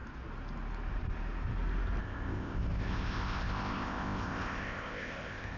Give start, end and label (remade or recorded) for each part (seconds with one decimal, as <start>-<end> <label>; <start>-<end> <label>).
0.0-2.0 recorded; 2.0-5.6 remade